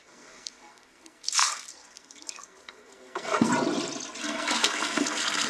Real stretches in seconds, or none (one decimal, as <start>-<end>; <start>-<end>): 3.5-4.2